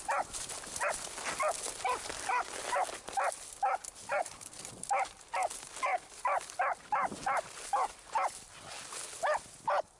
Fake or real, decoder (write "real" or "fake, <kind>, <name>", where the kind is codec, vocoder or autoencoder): real